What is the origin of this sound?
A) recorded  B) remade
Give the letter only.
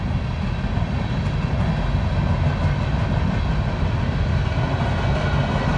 A